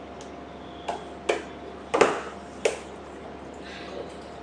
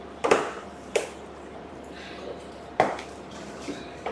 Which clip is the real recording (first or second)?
first